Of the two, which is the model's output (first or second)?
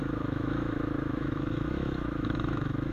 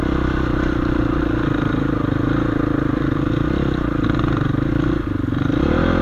first